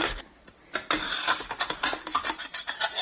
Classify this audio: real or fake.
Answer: real